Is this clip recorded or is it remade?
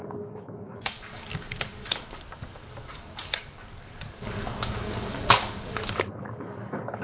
remade